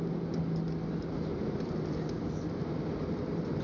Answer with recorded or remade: recorded